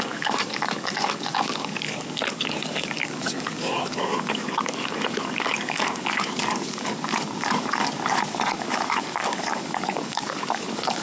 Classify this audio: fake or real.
fake